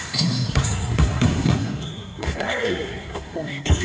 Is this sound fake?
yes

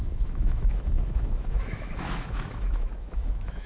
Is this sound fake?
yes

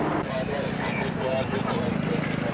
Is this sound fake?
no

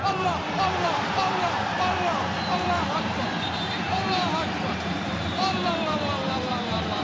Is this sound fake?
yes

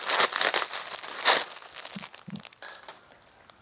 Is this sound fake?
no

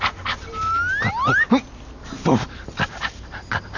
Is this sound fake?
no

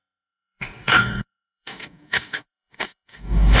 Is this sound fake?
yes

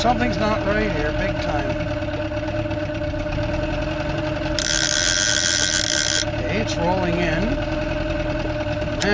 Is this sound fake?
no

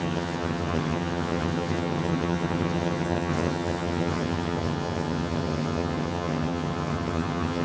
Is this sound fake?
yes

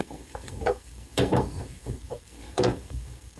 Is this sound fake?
yes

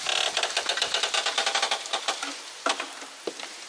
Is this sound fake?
no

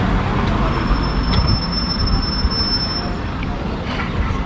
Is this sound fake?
no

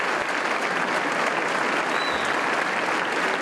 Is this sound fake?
no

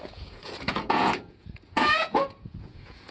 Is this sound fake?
yes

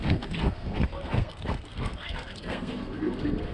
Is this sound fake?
yes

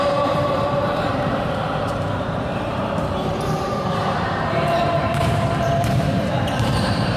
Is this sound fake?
yes